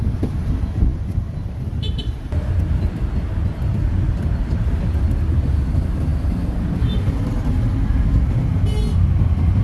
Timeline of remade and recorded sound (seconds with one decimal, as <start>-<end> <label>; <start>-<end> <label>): 0.0-9.6 recorded

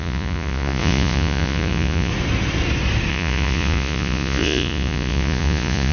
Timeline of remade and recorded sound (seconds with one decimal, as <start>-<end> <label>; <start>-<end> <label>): 0.0-2.1 remade; 2.1-3.1 recorded; 3.1-5.9 remade

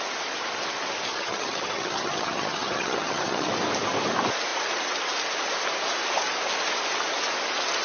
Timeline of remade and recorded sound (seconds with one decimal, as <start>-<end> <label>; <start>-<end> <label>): 0.0-1.1 recorded; 1.1-3.5 remade; 3.5-7.8 recorded

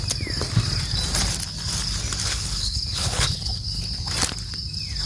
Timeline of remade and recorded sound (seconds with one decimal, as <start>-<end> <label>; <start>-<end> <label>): 0.0-2.2 recorded; 2.2-3.8 remade; 3.8-5.1 recorded

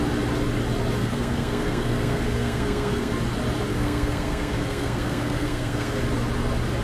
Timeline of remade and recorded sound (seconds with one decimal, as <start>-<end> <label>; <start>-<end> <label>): 0.0-1.0 recorded; 1.0-3.1 remade; 3.1-3.7 recorded; 3.7-6.0 remade; 6.0-6.8 recorded

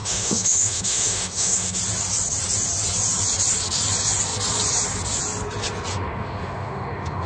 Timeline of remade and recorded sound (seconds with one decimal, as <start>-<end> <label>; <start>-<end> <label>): 0.0-1.8 remade; 1.8-5.9 recorded; 5.9-7.3 remade

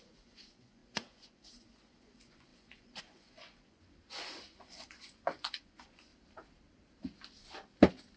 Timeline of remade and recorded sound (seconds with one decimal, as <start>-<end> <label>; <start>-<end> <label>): 0.0-6.1 remade; 6.1-8.2 recorded